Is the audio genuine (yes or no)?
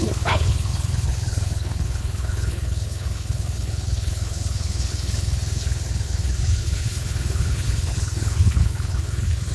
no